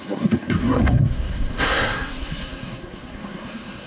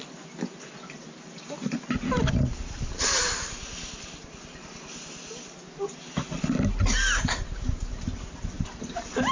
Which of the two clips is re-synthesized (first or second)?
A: first